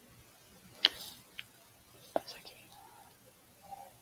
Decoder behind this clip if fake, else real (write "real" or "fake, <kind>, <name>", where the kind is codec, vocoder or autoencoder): real